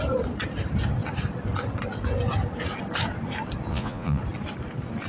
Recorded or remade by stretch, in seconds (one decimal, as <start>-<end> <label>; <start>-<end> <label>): 0.0-3.7 recorded; 3.7-4.2 remade; 4.2-5.1 recorded